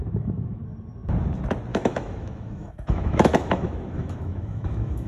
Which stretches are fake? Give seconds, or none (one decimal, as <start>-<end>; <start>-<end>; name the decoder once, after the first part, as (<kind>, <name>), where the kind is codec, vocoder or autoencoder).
0.0-0.6 (autoencoder, DAC-VAE); 1.7-5.1